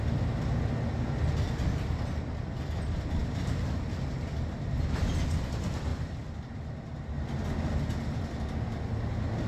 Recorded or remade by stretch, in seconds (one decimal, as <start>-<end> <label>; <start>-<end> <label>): 0.0-3.2 recorded; 3.2-3.8 remade; 3.8-5.9 recorded; 5.9-8.4 remade; 8.4-9.5 recorded